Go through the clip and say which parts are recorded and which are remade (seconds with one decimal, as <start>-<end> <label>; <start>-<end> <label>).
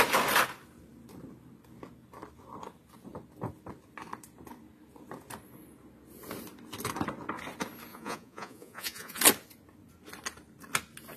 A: 0.0-7.9 recorded; 7.9-9.2 remade; 9.2-11.2 recorded